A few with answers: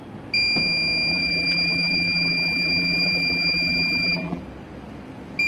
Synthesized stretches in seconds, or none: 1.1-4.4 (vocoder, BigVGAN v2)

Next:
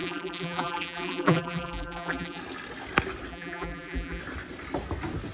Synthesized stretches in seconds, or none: 0.0-2.4 (vocoder, BigVGAN v2); 3.3-4.2

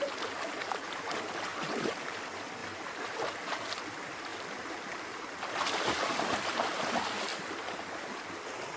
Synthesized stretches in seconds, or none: 1.5-2.2 (vocoder, BigVGAN v2); 2.6-3.3; 4.3-5.4

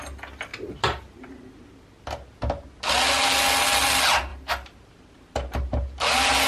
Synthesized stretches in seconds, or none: 4.3-5.7 (vocoder, BigVGAN v2)

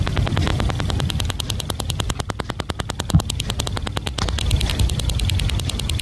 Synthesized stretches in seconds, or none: none

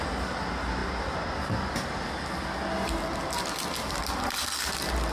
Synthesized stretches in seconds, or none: none